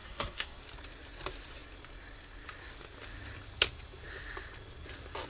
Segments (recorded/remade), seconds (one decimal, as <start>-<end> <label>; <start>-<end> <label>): 0.0-0.6 remade; 0.6-5.3 recorded